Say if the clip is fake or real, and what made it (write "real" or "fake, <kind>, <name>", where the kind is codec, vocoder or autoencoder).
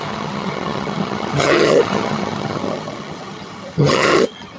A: fake, vocoder, HiFi-GAN